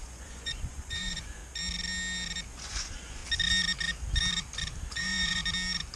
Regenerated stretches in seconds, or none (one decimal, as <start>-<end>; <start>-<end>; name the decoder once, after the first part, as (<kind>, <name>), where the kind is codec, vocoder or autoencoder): 0.0-1.4 (vocoder, Vocos); 2.5-3.2; 4.9-5.4

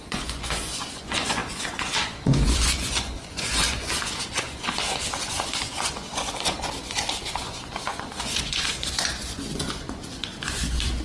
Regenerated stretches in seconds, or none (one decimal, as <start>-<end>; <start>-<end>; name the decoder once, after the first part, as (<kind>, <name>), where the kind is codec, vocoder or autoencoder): 0.0-11.0 (vocoder, Vocos)

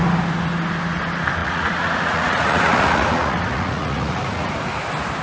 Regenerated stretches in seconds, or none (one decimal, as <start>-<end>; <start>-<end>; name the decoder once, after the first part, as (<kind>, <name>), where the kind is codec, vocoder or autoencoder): 1.4-4.5 (vocoder, Vocos)

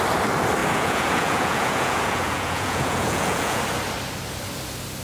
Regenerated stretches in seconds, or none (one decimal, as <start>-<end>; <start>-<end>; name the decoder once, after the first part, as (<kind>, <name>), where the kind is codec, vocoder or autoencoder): 0.6-3.6 (vocoder, Vocos)

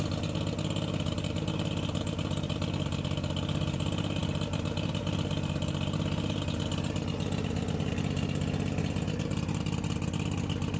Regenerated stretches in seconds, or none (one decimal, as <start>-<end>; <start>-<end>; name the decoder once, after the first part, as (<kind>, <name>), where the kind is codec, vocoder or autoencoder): none

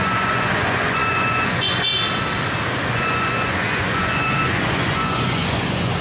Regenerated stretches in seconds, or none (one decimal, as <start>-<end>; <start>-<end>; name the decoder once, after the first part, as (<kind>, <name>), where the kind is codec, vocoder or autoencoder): 0.0-1.9 (vocoder, Vocos); 2.9-6.0